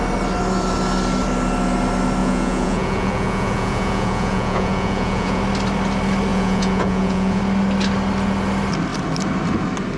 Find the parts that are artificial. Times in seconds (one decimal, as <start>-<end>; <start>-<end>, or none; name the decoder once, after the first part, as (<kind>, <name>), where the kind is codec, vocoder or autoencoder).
2.2-5.4 (vocoder, Vocos); 6.3-7.4